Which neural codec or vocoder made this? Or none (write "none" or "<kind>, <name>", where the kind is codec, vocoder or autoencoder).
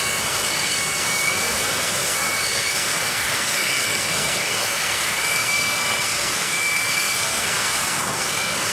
codec, SNAC